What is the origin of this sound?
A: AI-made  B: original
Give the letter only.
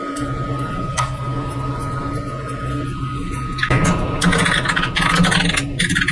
B